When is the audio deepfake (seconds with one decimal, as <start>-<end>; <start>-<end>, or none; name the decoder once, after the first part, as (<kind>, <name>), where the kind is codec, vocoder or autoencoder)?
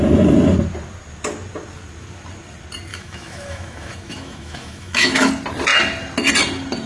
2.9-5.3 (autoencoder, DAC-VAE)